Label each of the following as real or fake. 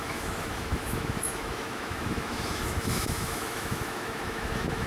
fake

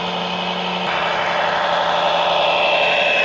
real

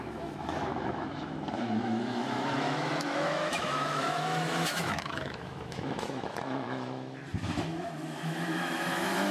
fake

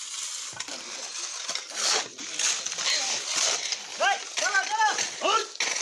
real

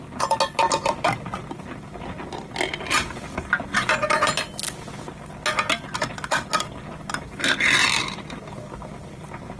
real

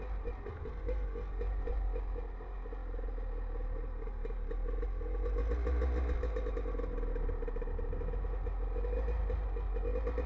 real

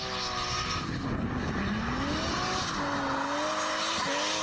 real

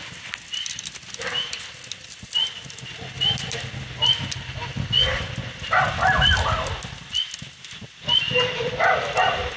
real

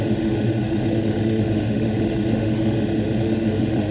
fake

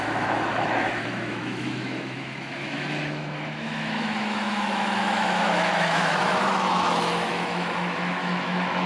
fake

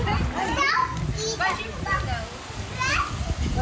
real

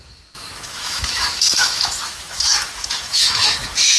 fake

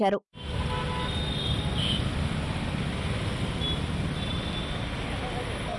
real